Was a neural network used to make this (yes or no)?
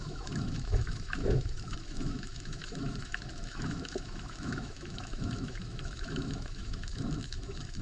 yes